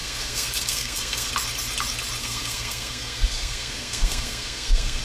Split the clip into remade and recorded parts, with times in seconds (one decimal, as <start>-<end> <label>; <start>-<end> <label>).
0.0-1.3 remade; 1.3-2.2 recorded; 2.2-5.0 remade